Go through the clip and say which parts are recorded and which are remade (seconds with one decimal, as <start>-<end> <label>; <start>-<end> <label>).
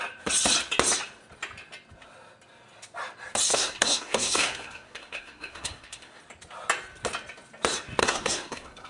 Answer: 0.0-3.5 recorded; 3.5-6.2 remade; 6.2-8.0 recorded; 8.0-8.9 remade